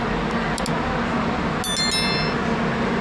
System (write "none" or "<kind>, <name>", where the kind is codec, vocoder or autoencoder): none